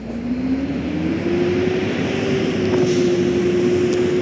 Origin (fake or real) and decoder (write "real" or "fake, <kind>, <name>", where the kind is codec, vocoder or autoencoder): real